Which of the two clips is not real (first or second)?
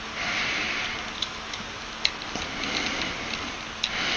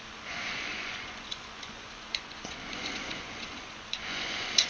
second